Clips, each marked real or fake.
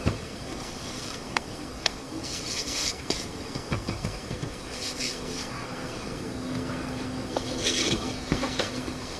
fake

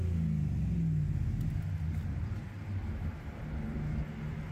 real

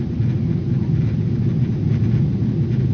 real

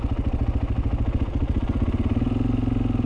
real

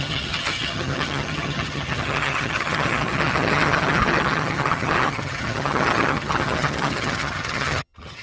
fake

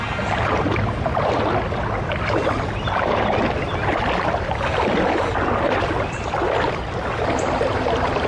real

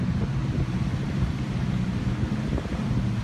real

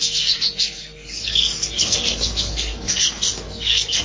fake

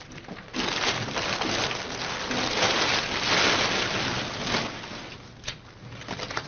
real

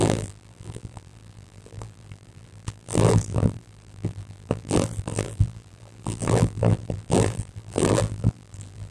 fake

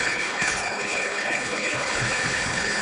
fake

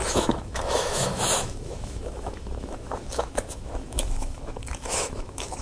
fake